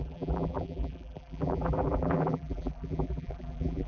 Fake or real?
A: fake